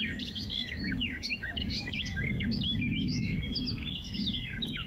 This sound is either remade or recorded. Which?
remade